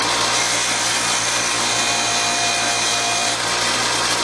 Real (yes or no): yes